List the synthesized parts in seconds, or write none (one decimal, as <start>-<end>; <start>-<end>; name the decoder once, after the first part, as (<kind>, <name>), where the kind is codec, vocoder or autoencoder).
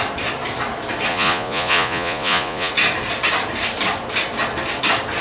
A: 1.1-2.7 (vocoder, Vocos)